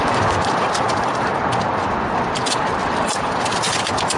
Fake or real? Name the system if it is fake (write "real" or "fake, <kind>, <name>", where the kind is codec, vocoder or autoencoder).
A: fake, vocoder, BigVGAN v2